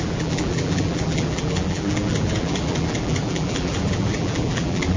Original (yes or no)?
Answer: no